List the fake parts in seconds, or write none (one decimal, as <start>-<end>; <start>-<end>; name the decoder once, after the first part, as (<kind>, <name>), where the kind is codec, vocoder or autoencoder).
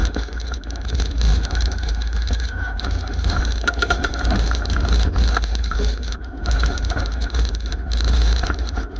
0.0-9.0 (autoencoder, DAC-VAE)